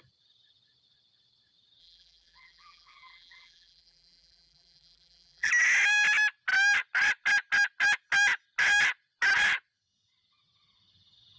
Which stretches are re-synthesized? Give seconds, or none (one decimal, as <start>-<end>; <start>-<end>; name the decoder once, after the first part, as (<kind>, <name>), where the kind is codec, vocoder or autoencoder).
1.8-5.5 (vocoder, BigVGAN v2)